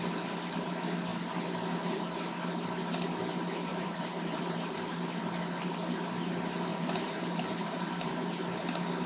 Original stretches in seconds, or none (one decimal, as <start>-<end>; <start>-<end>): 0.0-3.7; 5.2-6.7; 8.1-9.1